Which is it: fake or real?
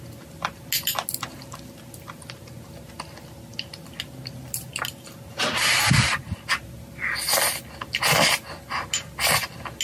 real